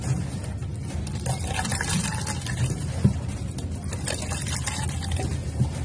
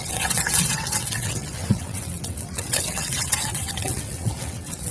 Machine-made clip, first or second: second